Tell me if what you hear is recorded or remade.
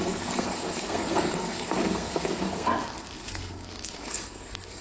remade